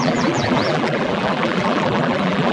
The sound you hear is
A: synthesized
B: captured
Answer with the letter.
A